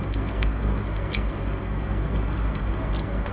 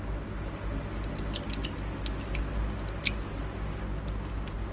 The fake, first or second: first